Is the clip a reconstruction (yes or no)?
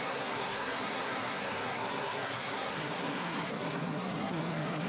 yes